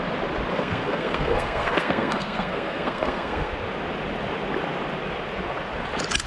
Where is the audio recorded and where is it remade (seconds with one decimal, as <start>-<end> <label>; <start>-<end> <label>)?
0.0-0.5 recorded; 0.5-3.5 remade; 3.5-6.3 recorded